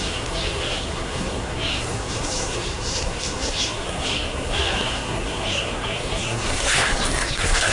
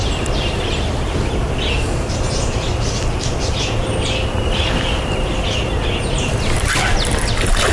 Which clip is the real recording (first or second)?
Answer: second